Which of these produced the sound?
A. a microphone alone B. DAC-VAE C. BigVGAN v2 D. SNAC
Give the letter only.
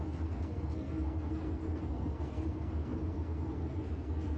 D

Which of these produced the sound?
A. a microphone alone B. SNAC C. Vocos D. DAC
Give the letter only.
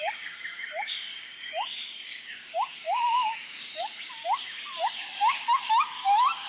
D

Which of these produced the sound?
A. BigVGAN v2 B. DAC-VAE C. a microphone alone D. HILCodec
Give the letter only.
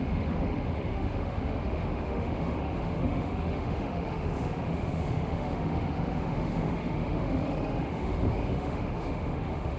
B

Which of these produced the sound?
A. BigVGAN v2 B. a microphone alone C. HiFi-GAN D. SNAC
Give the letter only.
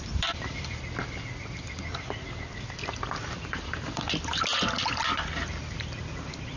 A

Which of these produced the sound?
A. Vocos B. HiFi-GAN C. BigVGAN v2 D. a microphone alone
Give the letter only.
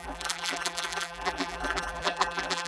C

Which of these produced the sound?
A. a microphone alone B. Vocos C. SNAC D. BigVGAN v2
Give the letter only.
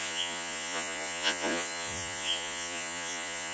B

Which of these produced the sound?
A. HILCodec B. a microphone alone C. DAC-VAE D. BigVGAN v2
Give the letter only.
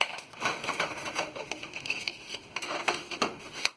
C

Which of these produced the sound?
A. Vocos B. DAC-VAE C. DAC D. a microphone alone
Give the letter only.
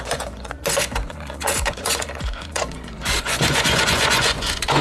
A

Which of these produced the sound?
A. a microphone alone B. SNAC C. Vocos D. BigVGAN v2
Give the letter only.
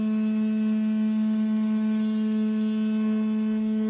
A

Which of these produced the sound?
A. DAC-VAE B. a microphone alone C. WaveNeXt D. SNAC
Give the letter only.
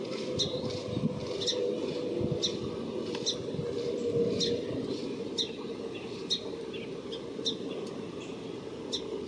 B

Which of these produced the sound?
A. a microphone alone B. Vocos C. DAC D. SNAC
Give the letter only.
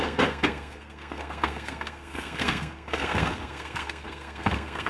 D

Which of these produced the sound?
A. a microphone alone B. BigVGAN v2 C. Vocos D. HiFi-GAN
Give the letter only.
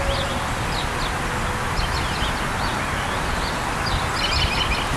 A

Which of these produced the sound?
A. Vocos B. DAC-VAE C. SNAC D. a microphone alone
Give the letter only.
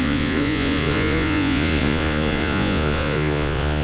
A